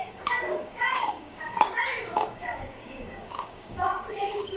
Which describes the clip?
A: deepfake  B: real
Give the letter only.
A